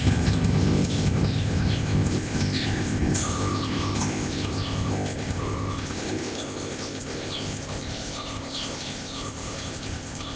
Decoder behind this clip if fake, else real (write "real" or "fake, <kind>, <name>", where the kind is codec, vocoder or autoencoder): fake, codec, ZipCodec